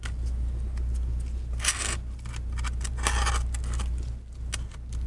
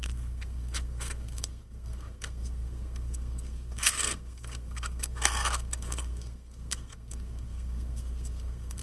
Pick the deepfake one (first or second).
second